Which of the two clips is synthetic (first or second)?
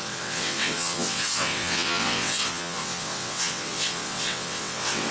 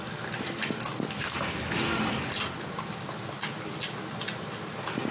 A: first